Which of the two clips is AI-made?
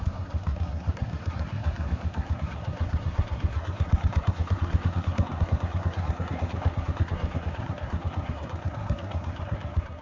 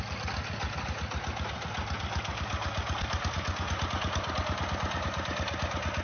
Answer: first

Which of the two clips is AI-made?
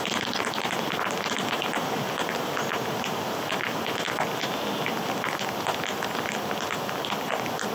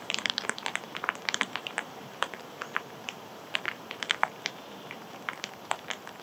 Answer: second